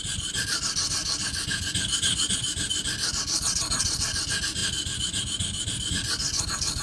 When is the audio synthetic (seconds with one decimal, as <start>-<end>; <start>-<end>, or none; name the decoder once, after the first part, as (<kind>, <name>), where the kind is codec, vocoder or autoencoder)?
none